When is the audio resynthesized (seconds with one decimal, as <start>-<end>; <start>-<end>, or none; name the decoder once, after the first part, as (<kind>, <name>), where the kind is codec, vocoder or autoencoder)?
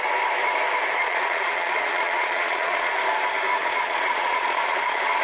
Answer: 1.0-2.9 (vocoder, Vocos); 3.6-5.2